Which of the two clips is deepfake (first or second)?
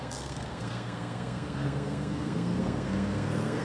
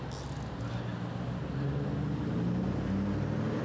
first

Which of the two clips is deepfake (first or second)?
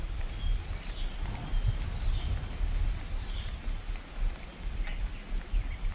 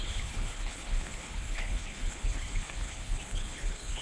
second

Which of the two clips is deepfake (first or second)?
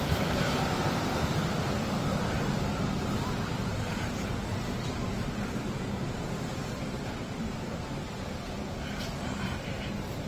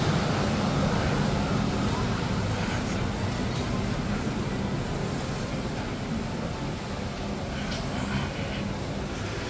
first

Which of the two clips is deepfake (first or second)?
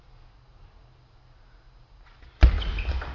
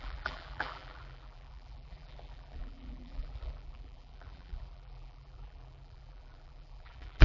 second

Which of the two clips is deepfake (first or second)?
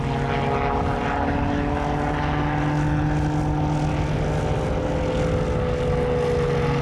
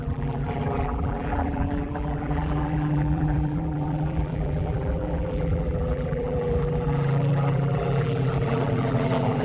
second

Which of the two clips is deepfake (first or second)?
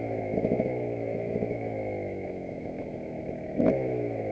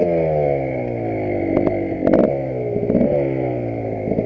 first